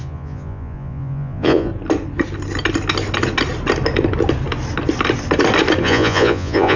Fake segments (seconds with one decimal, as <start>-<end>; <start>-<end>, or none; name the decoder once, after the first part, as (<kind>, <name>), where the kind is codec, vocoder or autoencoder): 0.0-1.7 (vocoder, Vocos); 5.8-6.8